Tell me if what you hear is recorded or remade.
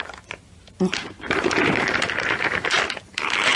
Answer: remade